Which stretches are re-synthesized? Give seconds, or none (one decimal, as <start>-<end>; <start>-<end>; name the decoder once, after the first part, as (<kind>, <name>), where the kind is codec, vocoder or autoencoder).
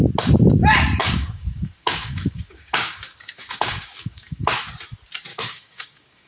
1.0-4.5 (codec, DAC); 5.3-6.3